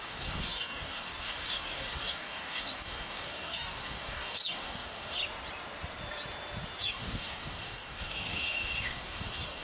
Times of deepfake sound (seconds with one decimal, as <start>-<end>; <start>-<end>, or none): 0.0-5.2; 6.8-9.6